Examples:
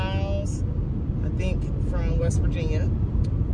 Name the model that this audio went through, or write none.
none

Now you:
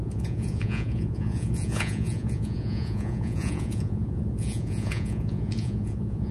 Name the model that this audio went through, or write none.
vocoder, Vocos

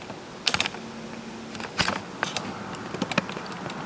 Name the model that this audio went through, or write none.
none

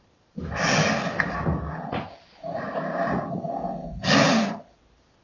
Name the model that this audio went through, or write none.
none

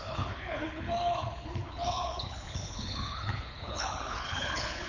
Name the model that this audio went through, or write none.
codec, HILCodec